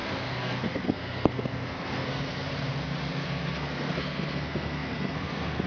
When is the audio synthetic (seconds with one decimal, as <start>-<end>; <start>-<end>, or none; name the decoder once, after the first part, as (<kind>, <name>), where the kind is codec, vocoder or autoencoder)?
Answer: 0.0-2.5 (codec, SNAC); 3.1-5.7